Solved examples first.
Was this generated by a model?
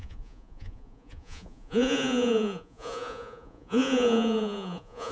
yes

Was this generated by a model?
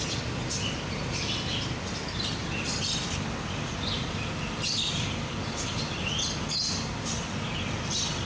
no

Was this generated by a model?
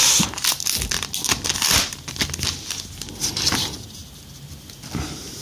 no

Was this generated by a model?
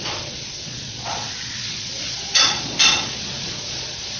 yes